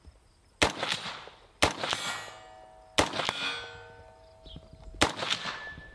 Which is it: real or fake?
real